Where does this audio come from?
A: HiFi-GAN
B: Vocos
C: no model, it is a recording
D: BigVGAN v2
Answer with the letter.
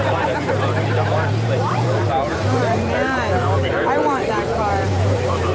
D